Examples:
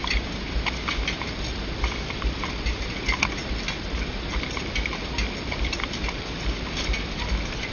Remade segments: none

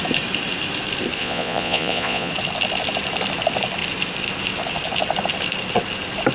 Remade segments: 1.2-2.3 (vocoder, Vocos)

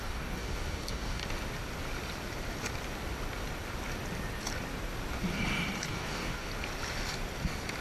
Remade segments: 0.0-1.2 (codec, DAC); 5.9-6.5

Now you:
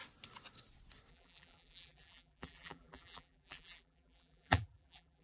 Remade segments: 1.1-5.2 (vocoder, BigVGAN v2)

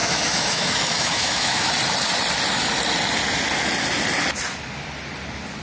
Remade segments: 0.0-1.7 (autoencoder, DAC-VAE)

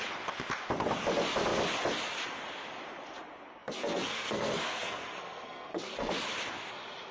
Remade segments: 3.6-6.1 (codec, SNAC)

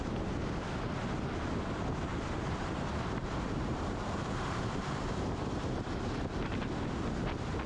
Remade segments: 2.1-4.6 (vocoder, BigVGAN v2)

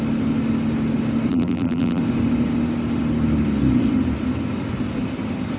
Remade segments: 1.3-2.0 (vocoder, BigVGAN v2)